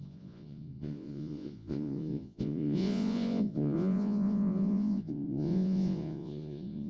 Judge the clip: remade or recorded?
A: remade